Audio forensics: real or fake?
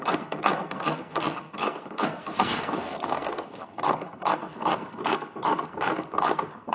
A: fake